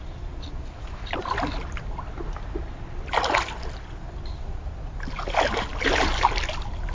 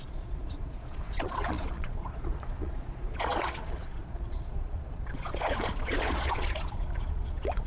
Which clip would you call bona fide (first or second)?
first